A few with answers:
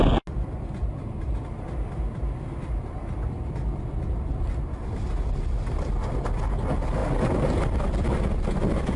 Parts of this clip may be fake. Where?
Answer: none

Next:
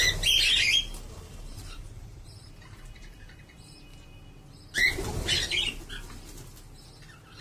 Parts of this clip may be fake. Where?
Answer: 1.5-3.4 (vocoder, BigVGAN v2)

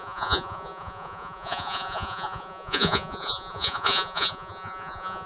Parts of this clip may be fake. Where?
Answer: 0.0-5.3 (vocoder, Vocos)

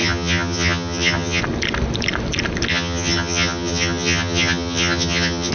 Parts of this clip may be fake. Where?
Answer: 0.0-1.4 (vocoder, HiFi-GAN); 2.7-5.5

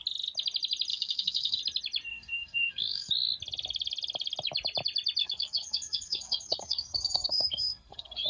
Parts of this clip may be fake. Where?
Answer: 0.9-1.6 (codec, SNAC); 2.1-3.1; 5.2-8.3

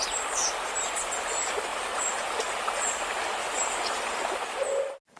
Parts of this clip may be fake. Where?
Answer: 1.7-2.8 (vocoder, BigVGAN v2); 3.4-4.1

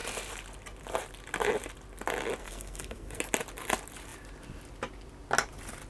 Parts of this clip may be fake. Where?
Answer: 2.4-3.2 (codec, SNAC)

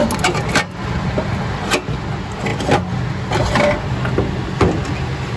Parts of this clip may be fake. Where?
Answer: none